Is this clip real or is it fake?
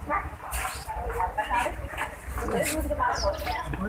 real